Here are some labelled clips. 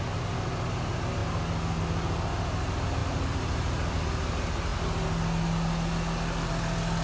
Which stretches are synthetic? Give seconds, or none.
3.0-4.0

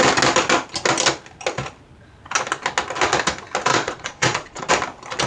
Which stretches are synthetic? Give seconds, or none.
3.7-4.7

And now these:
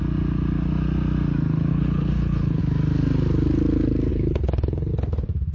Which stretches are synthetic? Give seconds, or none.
1.7-2.6; 4.1-4.9

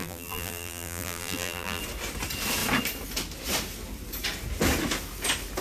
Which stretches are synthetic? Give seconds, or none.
0.0-1.8

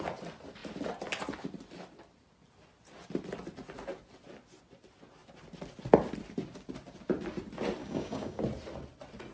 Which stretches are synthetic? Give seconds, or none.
7.8-8.4

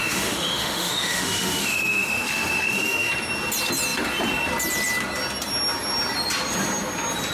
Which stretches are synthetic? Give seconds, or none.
0.0-3.1

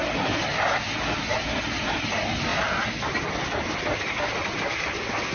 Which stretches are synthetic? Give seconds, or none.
none

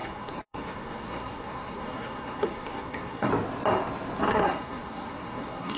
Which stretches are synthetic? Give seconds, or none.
0.0-3.3; 4.3-5.8